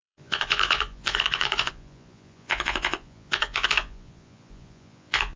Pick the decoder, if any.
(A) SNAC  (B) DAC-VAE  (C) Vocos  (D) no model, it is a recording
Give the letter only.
C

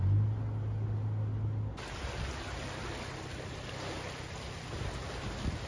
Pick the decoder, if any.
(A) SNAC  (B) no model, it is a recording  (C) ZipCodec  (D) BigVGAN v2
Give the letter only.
B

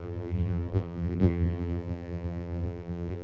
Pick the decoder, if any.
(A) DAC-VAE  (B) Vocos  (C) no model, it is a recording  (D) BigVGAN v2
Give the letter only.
D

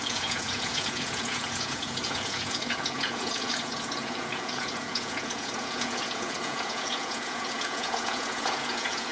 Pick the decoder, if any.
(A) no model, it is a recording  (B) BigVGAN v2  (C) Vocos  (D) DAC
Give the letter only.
C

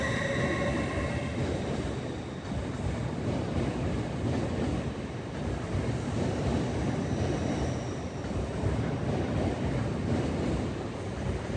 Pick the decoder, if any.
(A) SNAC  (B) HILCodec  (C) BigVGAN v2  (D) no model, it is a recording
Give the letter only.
D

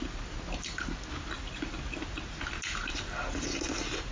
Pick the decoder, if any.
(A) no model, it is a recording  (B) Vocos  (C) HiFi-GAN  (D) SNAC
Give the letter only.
A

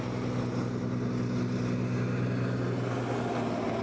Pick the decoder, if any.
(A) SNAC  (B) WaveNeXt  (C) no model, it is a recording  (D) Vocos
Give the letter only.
C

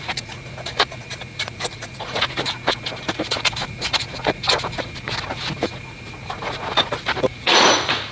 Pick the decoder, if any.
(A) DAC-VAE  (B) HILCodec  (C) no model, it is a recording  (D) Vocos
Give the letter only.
D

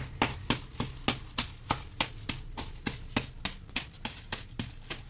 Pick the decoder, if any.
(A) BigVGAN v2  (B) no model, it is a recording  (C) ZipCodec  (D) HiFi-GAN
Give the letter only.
B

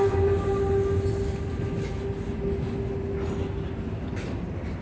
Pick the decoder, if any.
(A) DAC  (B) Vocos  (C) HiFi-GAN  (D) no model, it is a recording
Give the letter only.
D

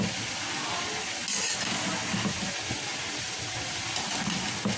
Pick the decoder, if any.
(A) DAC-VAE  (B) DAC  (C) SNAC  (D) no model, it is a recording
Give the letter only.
D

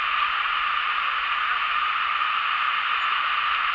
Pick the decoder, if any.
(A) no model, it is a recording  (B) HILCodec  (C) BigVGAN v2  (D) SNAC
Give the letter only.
A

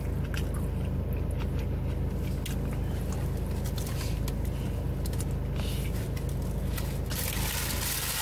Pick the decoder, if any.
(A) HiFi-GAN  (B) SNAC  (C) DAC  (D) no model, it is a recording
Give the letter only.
D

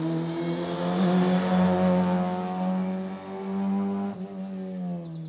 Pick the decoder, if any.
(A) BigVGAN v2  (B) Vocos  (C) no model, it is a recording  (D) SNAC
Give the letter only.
C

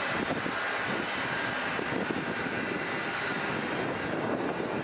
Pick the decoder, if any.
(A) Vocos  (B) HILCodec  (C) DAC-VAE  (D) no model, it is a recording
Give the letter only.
D